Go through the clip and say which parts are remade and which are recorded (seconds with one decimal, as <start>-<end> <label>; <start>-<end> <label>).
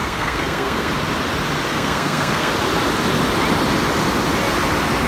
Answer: 0.0-0.9 remade; 0.9-1.7 recorded; 1.7-2.5 remade; 2.5-5.1 recorded